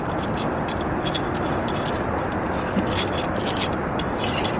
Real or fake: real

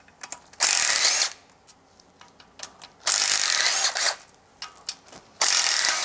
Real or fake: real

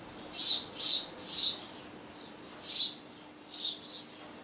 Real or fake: real